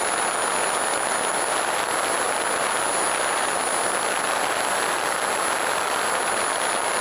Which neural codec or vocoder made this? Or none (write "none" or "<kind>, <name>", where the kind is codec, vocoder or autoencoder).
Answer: none